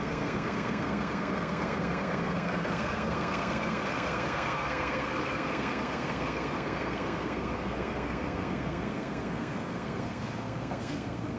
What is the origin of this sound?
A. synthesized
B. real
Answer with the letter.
A